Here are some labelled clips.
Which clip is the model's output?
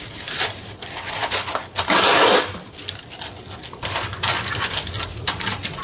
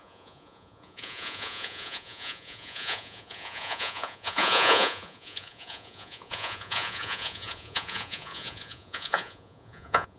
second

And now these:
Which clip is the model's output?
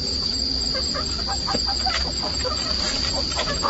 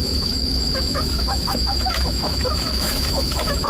second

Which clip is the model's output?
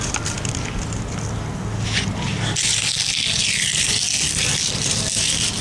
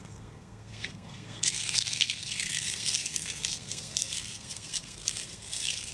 second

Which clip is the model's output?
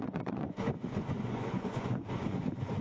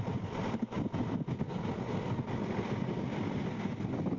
first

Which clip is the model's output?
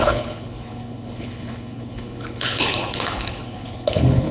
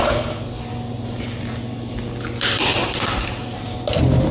first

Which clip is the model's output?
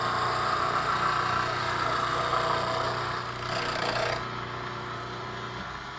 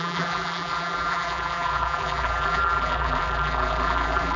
second